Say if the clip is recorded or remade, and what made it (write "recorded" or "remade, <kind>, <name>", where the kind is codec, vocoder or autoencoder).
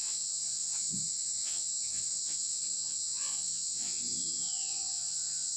remade, vocoder, Vocos